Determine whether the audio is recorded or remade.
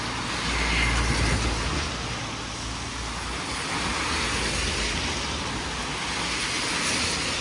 recorded